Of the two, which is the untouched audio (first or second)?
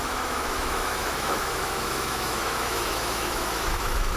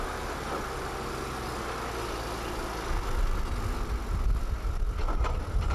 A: second